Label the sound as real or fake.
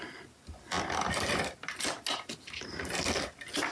real